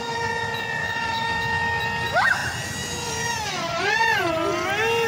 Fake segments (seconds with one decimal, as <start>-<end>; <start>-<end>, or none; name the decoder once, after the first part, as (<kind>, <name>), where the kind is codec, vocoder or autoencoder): 0.8-1.8 (autoencoder, DAC-VAE)